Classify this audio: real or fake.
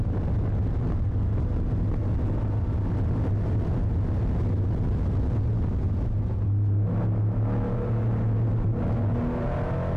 real